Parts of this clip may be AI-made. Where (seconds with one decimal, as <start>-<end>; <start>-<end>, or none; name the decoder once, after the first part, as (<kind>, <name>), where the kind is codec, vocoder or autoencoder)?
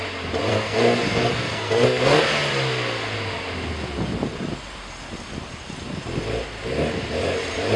0.5-2.2 (codec, SNAC)